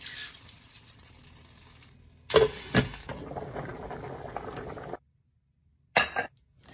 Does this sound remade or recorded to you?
recorded